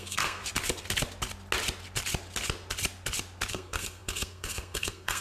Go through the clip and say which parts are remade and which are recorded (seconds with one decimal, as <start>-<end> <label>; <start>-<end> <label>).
0.0-0.4 remade; 0.4-3.5 recorded; 3.5-5.2 remade